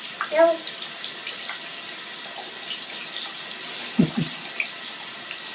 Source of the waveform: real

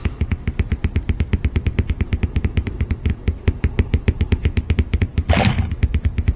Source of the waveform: fake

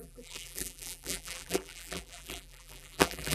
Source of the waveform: fake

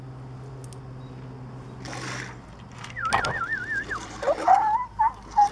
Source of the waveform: real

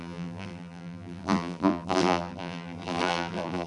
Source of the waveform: fake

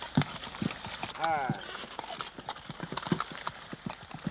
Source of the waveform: real